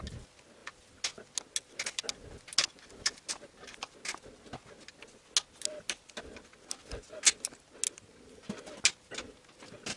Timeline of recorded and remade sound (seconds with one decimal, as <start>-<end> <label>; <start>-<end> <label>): 0.0-10.0 recorded